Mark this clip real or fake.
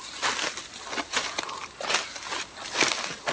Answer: real